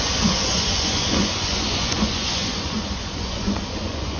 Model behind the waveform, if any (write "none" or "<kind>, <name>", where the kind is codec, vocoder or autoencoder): vocoder, Vocos